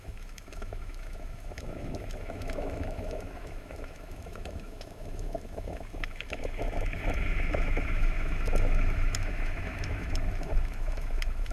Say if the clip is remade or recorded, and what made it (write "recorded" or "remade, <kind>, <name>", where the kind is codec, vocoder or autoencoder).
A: remade, autoencoder, DAC-VAE